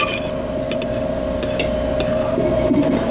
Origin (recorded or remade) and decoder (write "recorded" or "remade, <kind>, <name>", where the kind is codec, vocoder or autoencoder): recorded